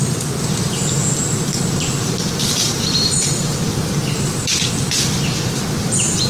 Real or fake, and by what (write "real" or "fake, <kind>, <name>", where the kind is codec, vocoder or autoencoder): fake, vocoder, BigVGAN v2